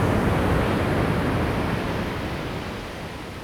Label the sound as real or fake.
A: real